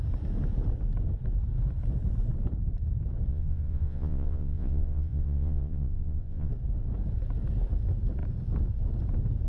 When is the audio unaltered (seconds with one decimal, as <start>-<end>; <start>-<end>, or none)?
0.0-3.3; 6.5-9.5